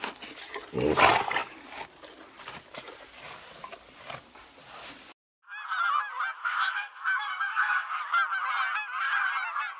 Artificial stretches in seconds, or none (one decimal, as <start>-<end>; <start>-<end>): 6.4-8.0